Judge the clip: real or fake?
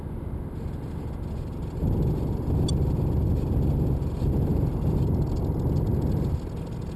real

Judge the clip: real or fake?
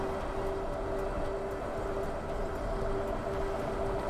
real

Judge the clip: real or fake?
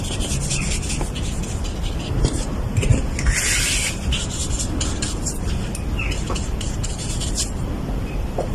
fake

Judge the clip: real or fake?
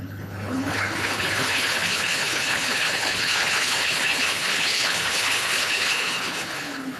fake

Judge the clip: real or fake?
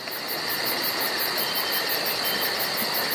real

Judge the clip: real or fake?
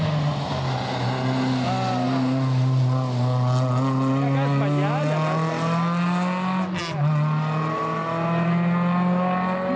real